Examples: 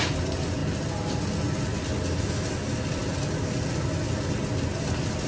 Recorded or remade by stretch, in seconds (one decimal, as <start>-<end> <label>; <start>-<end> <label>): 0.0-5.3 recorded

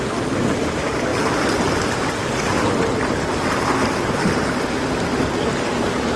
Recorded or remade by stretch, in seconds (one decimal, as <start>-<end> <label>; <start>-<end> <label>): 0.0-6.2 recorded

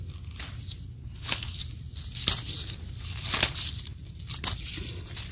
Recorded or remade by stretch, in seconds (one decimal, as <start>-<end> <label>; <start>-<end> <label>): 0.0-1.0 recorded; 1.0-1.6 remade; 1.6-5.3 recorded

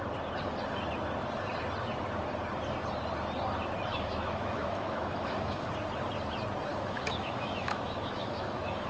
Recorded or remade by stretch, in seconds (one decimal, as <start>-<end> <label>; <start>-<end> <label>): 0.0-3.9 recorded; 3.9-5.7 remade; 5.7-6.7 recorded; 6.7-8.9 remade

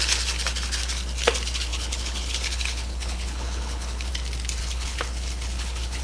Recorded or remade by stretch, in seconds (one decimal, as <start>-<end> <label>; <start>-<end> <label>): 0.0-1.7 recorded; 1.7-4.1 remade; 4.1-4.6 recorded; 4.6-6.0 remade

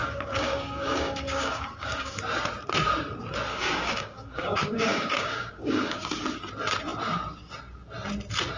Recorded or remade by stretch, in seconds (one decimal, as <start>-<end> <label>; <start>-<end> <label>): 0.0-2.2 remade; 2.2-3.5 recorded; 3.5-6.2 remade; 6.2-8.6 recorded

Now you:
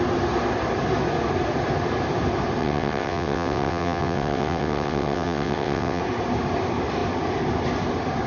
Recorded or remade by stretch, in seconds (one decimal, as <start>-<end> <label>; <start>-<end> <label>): 0.0-2.6 recorded; 2.6-6.0 remade; 6.0-8.3 recorded